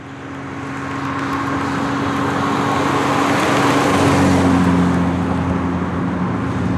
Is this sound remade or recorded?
recorded